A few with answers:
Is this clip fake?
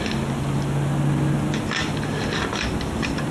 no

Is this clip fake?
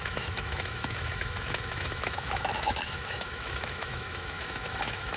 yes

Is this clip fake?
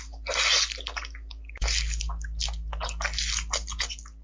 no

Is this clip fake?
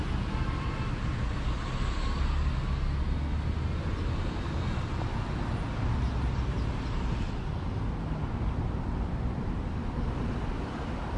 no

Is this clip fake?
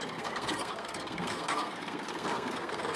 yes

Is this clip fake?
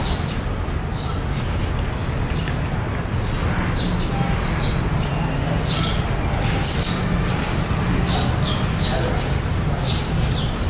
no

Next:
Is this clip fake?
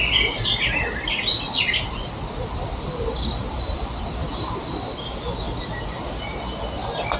no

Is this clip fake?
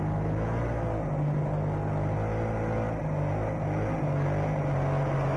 no